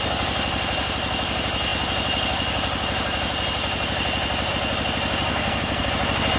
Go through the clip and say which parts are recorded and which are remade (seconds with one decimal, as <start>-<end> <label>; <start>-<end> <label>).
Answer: 0.0-5.3 recorded; 5.3-5.9 remade; 5.9-6.4 recorded

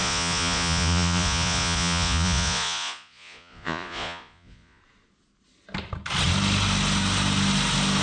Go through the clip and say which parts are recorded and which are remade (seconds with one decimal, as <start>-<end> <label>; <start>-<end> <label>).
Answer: 0.0-4.8 remade; 4.8-8.0 recorded

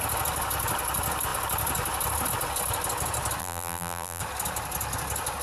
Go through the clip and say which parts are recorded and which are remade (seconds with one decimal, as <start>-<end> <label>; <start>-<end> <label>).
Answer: 0.0-3.4 recorded; 3.4-4.2 remade; 4.2-5.4 recorded

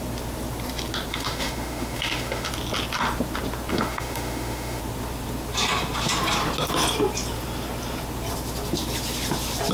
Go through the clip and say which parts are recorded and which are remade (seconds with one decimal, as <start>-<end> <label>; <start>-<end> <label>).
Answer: 0.0-1.1 recorded; 1.1-2.5 remade; 2.5-3.7 recorded; 3.7-4.8 remade; 4.8-9.7 recorded

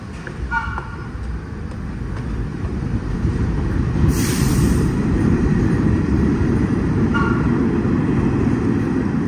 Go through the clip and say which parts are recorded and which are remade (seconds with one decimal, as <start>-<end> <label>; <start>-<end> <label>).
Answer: 0.0-2.5 recorded; 2.5-7.5 remade; 7.5-9.3 recorded

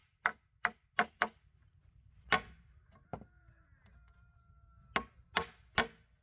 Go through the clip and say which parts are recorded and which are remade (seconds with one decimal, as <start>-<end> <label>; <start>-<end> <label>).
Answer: 0.0-6.2 recorded

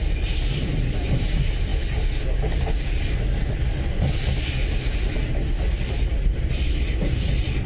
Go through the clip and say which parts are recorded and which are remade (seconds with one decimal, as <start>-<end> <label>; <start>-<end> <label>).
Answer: 0.0-7.7 recorded

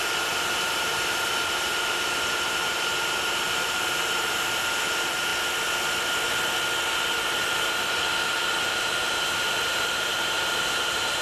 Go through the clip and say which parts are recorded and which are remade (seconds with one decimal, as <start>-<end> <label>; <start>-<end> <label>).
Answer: 0.0-5.3 remade; 5.3-6.9 recorded; 6.9-11.2 remade